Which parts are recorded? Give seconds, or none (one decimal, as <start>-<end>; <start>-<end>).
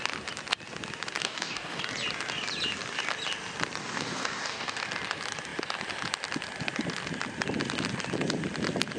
0.0-1.2; 1.8-3.8; 4.8-9.0